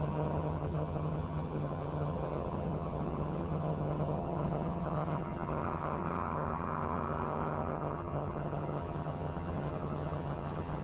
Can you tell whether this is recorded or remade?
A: remade